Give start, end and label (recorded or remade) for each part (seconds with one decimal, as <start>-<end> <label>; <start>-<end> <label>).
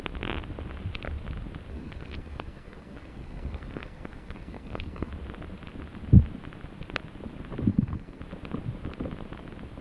0.0-1.7 recorded; 1.7-5.1 remade; 5.1-7.7 recorded; 7.7-8.2 remade; 8.2-9.8 recorded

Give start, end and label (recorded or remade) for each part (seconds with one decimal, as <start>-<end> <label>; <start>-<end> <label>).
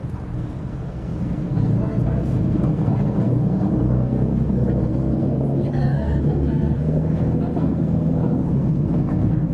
0.0-9.5 remade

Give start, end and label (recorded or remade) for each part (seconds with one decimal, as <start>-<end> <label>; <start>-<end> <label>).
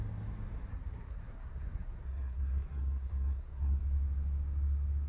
0.0-0.7 recorded; 0.7-3.8 remade; 3.8-5.1 recorded